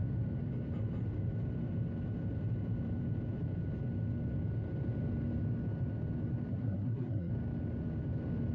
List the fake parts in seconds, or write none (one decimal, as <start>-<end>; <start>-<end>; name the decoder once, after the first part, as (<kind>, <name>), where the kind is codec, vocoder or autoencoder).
6.5-7.3 (codec, SNAC)